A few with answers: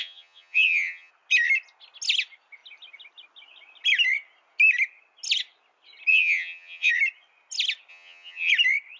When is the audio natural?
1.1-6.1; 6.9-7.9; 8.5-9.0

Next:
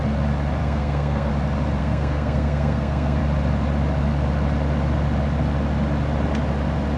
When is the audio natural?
0.0-0.6; 1.3-1.8; 3.2-7.0

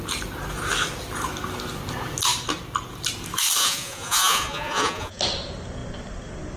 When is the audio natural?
0.0-3.6; 5.2-6.6

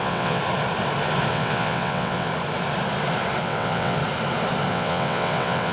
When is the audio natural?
0.4-1.3; 2.3-3.4; 4.0-4.7

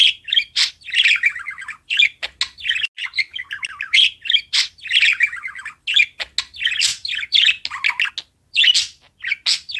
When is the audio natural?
0.0-9.8

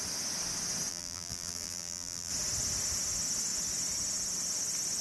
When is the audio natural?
0.0-0.9; 2.3-5.0